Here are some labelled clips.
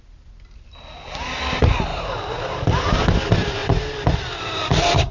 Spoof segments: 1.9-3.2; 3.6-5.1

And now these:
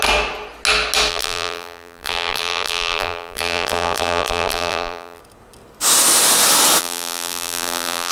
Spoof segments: 1.1-5.2; 6.8-8.1